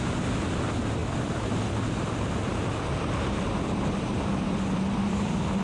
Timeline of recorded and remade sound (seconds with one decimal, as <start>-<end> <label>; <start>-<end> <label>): 0.0-5.6 remade